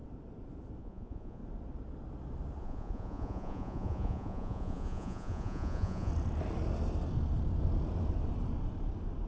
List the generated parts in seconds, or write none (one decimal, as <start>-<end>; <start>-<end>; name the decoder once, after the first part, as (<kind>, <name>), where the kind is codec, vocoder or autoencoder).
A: 0.8-1.4 (vocoder, Vocos); 2.6-6.1